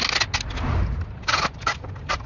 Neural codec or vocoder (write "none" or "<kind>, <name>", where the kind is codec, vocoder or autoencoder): none